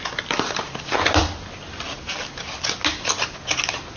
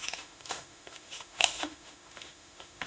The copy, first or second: second